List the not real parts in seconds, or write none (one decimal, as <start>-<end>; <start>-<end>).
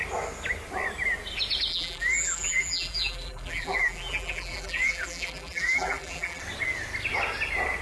1.7-6.4